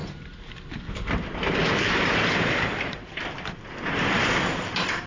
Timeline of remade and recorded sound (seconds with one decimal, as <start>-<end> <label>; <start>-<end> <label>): 0.0-3.1 remade; 3.1-5.1 recorded